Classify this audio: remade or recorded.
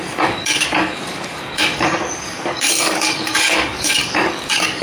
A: remade